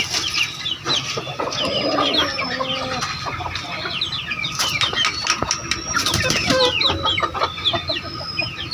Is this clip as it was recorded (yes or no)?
yes